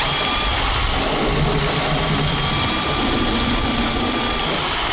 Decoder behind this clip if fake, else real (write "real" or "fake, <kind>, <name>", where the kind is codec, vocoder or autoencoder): real